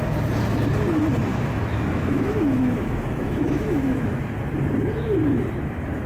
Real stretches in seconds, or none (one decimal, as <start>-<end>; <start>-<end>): 0.0-1.3; 4.2-6.1